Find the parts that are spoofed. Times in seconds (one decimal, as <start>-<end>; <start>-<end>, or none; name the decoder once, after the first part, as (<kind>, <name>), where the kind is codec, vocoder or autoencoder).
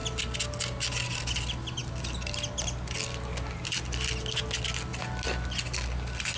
none